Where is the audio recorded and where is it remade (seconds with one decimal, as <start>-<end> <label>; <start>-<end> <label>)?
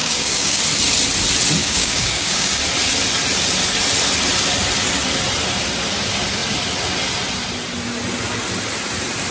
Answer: 0.0-0.6 remade; 0.6-1.6 recorded; 1.6-2.6 remade; 2.6-9.3 recorded